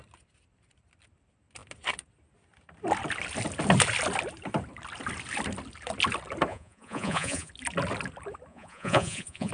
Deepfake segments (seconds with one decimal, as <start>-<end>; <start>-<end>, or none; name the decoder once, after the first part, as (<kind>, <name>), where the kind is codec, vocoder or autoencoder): 6.5-7.5 (vocoder, Vocos); 8.5-9.5